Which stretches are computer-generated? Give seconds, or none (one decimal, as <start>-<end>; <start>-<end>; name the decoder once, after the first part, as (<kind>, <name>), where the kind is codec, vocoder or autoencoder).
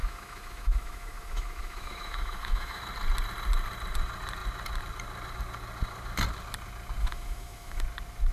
0.0-2.8 (autoencoder, DAC-VAE); 7.0-7.8